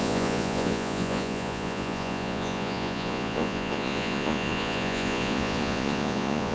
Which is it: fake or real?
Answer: fake